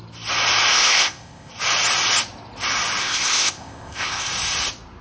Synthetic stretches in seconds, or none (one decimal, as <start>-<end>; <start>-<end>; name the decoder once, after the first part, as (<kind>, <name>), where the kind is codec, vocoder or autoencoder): 0.7-1.5 (codec, ZipCodec); 3.0-4.3